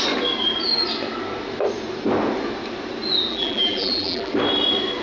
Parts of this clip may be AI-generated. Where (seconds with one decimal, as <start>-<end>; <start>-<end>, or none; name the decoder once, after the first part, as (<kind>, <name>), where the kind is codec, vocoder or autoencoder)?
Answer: 3.3-4.3 (vocoder, BigVGAN v2)